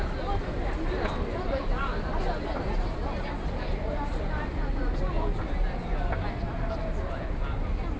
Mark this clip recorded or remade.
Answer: recorded